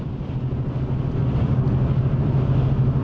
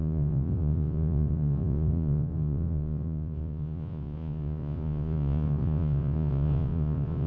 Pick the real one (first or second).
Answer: first